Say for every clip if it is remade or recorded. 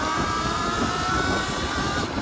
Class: remade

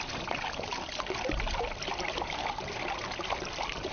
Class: recorded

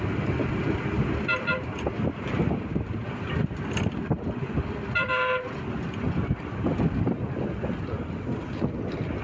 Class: remade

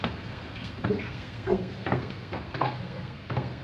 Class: remade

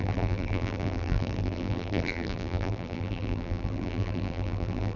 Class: remade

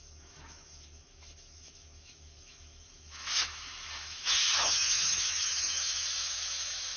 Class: remade